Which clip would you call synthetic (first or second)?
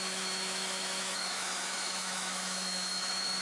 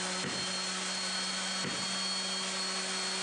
first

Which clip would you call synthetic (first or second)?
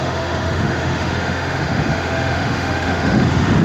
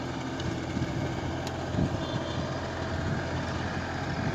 first